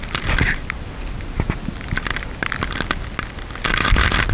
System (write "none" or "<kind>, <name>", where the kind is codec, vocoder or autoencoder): none